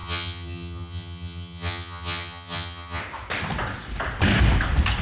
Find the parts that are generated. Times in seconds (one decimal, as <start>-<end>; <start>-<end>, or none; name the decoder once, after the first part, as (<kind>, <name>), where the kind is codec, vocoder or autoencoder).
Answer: 0.0-3.0 (vocoder, HiFi-GAN)